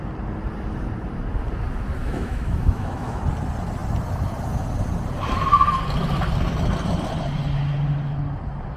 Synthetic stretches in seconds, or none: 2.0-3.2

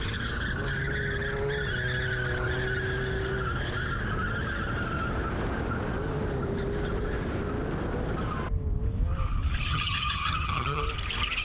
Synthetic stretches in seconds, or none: 9.7-10.8

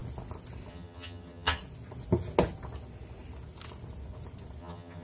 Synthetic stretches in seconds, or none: 0.7-1.6; 4.6-5.0

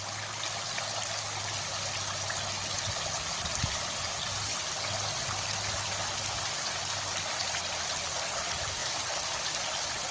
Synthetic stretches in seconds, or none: none

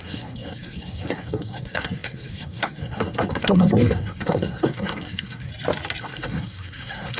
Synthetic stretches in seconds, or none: 0.0-5.5; 6.0-7.2

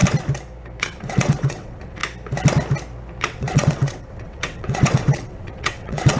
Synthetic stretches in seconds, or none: 0.8-2.0; 3.2-6.2

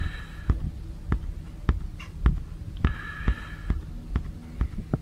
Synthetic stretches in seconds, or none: none

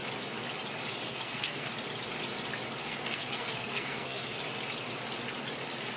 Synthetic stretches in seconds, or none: 1.1-1.7; 2.8-4.4